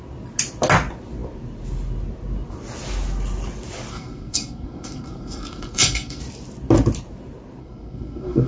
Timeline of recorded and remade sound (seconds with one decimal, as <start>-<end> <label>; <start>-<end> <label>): 0.0-3.9 recorded; 3.9-6.2 remade; 6.2-7.6 recorded; 7.6-8.5 remade